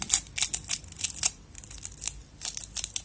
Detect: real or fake real